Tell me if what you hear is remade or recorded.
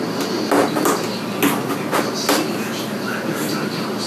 recorded